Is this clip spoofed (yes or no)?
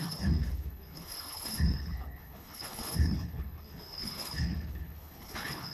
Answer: yes